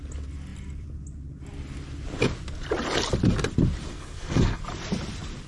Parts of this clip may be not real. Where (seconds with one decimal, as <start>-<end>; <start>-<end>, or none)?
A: 3.9-4.6